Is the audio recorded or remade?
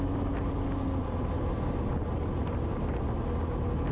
recorded